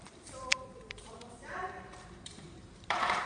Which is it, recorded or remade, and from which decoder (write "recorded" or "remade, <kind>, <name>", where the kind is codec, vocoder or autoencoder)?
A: remade, vocoder, BigVGAN v2